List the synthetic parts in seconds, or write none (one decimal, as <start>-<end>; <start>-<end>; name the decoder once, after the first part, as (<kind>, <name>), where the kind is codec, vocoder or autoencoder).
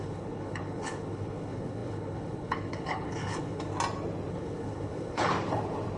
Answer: 0.0-3.7 (codec, HILCodec); 4.3-5.3